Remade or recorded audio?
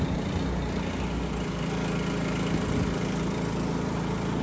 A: recorded